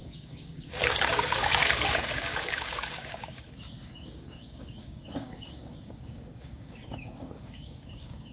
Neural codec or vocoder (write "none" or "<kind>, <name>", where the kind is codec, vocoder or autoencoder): codec, DAC